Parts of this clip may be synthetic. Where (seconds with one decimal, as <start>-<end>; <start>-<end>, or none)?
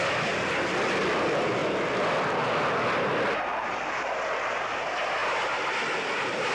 none